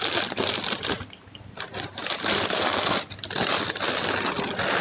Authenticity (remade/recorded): recorded